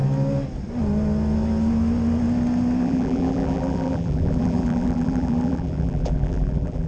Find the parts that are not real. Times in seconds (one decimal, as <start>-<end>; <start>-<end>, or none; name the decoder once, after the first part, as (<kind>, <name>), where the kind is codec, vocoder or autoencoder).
2.8-6.9 (vocoder, BigVGAN v2)